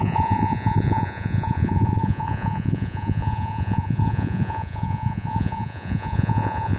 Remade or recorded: remade